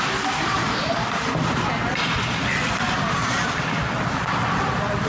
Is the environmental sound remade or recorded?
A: recorded